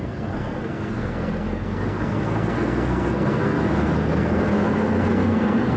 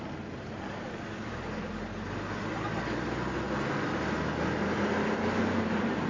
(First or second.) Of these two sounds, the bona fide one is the second